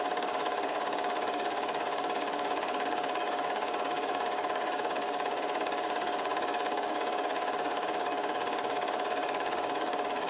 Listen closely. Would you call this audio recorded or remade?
remade